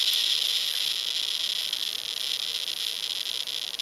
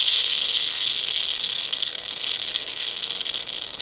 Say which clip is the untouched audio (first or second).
first